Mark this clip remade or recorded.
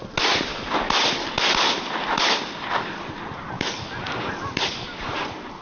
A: recorded